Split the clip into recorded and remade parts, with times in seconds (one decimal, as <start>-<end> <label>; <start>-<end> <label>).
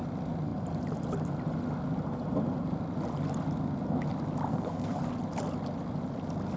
0.0-4.5 recorded; 4.5-5.0 remade; 5.0-6.6 recorded